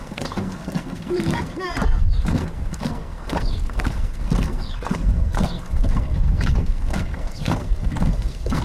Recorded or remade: remade